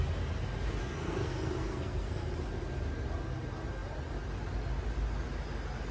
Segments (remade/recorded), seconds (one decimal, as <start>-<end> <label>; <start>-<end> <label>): 0.0-0.8 recorded; 0.8-2.3 remade; 2.3-5.9 recorded

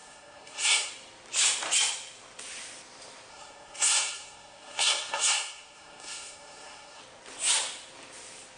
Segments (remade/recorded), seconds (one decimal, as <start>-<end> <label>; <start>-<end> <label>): 0.0-0.9 remade; 0.9-3.3 recorded; 3.3-7.0 remade; 7.0-8.6 recorded

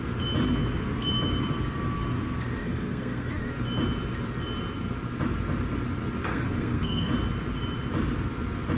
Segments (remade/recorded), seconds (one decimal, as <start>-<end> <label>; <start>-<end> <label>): 0.0-2.6 recorded; 2.6-3.5 remade; 3.5-6.3 recorded; 6.3-7.1 remade; 7.1-8.8 recorded

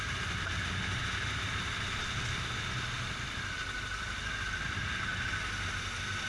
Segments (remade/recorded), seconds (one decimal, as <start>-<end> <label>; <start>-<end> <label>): 0.0-6.3 recorded

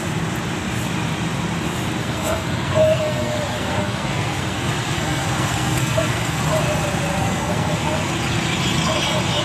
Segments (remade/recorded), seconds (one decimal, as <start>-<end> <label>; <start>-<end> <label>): 0.0-2.0 recorded; 2.0-6.4 remade; 6.4-7.1 recorded; 7.1-8.1 remade; 8.1-9.4 recorded

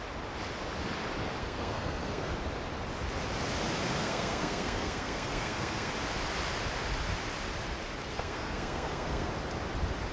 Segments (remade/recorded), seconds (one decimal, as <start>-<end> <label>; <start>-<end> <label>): 0.0-1.4 recorded; 1.4-2.3 remade; 2.3-4.0 recorded; 4.0-5.9 remade; 5.9-8.1 recorded; 8.1-9.3 remade; 9.3-10.1 recorded